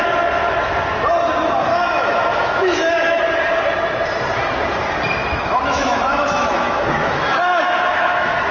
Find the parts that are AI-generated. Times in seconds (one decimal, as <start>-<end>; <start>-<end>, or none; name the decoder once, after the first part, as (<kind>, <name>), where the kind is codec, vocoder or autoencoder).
1.7-3.2 (autoencoder, DAC-VAE); 5.2-8.5